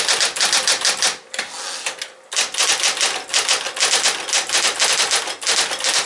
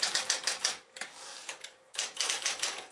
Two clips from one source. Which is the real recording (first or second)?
first